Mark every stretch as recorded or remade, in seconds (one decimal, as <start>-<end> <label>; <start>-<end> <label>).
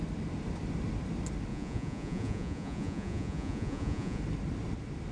0.0-1.5 recorded; 1.5-4.2 remade; 4.2-5.1 recorded